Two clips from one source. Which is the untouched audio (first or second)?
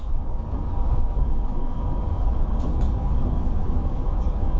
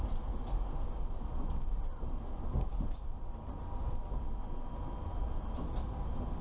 second